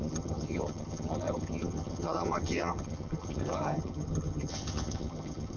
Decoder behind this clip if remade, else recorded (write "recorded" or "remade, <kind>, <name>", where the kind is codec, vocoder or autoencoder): remade, vocoder, HiFi-GAN